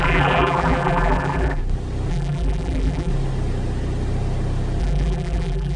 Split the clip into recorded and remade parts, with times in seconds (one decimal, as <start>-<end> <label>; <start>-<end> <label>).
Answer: 0.0-1.6 remade; 1.6-2.1 recorded; 2.1-3.1 remade; 3.1-4.8 recorded; 4.8-5.8 remade